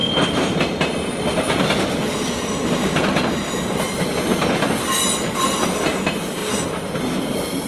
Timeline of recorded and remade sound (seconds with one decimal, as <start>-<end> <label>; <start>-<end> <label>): 0.0-1.2 recorded; 1.2-4.3 remade; 4.3-5.1 recorded; 5.1-6.4 remade; 6.4-7.2 recorded; 7.2-7.7 remade